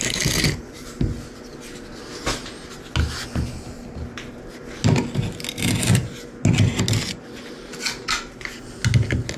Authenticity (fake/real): real